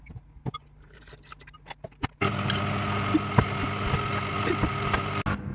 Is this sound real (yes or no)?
yes